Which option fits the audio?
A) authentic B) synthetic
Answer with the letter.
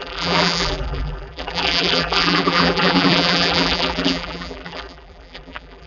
B